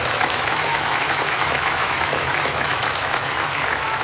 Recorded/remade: remade